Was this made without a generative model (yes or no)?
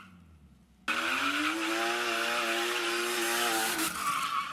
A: yes